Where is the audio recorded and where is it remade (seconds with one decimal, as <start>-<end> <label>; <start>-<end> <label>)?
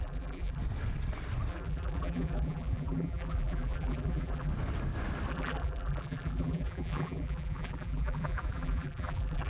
0.0-0.6 remade; 0.6-1.5 recorded; 1.5-4.5 remade; 4.5-5.3 recorded; 5.3-9.5 remade